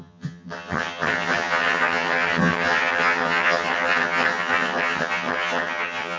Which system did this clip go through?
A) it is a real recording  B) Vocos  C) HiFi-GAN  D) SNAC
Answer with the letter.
C